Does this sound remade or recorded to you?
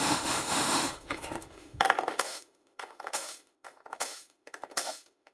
remade